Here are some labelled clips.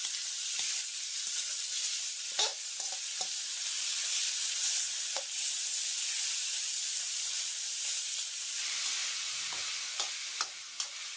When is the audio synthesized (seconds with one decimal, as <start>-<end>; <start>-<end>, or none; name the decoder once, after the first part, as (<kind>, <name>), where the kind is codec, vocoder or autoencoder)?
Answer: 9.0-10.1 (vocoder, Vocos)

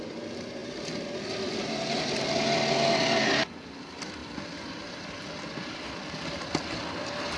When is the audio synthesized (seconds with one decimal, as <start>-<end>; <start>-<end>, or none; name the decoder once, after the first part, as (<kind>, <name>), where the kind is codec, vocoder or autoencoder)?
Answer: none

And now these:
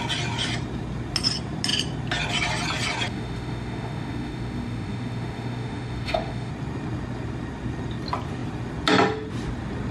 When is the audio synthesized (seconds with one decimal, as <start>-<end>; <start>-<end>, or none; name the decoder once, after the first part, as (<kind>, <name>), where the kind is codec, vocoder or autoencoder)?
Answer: 3.1-6.5 (autoencoder, DAC-VAE)

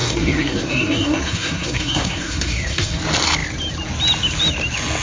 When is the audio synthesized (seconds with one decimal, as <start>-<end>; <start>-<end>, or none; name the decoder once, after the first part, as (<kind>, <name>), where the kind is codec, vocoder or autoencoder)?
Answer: 0.0-3.0 (codec, SNAC)

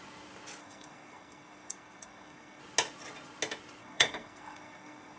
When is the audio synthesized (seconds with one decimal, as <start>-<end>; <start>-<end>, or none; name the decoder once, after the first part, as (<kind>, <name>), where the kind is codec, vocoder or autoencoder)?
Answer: 0.6-2.6 (codec, SNAC); 3.8-5.2